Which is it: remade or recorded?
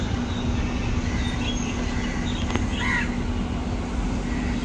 recorded